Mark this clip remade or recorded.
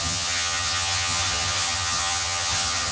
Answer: remade